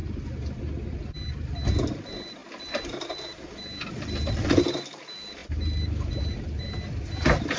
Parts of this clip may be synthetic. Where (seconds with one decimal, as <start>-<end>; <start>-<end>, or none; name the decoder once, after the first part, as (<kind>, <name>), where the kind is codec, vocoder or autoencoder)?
none